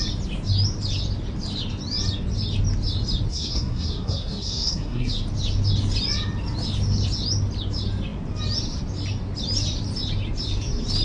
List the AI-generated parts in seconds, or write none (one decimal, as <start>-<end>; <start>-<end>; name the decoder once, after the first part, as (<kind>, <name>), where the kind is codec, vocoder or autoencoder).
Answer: 3.3-5.1 (codec, SNAC)